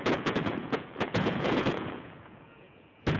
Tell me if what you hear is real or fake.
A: fake